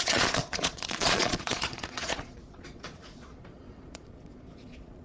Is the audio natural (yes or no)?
no